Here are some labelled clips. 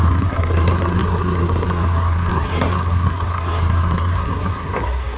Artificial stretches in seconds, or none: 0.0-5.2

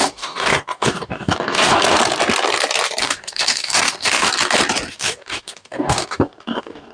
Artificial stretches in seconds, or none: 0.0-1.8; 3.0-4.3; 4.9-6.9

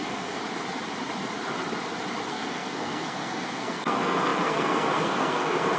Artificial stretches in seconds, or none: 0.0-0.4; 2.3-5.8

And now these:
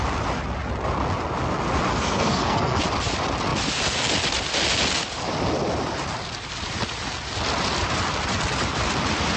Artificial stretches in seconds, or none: 1.9-2.8

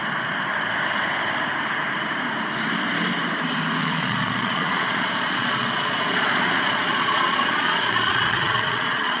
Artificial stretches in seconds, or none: 3.8-9.2

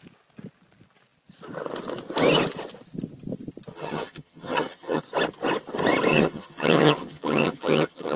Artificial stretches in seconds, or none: 3.7-5.0; 6.1-8.2

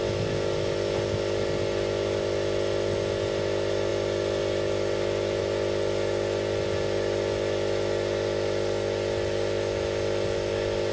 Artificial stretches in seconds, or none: none